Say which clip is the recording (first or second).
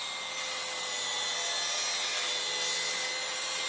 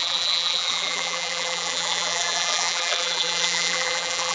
first